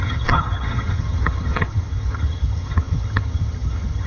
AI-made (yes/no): yes